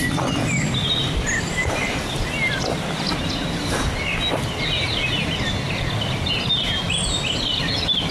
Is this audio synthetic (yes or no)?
no